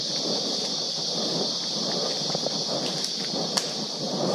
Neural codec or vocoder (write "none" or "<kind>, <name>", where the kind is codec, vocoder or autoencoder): none